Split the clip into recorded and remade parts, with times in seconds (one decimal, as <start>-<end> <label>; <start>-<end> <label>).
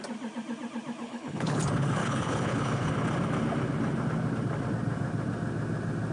0.0-1.0 recorded; 1.0-1.6 remade; 1.6-2.0 recorded; 2.0-2.9 remade; 2.9-6.1 recorded